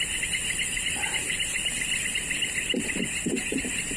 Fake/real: real